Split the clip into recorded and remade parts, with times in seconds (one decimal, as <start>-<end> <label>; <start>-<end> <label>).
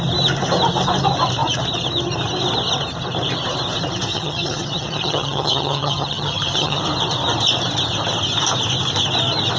0.0-4.1 recorded; 4.1-6.8 remade; 6.8-9.6 recorded